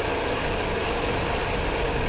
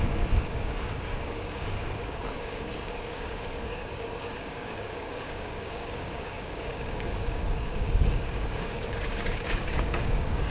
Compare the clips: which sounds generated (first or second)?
second